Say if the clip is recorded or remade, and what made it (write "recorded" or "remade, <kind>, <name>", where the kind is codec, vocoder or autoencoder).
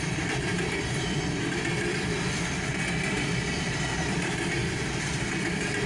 remade, vocoder, BigVGAN v2